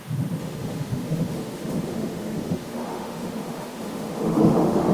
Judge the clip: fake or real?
fake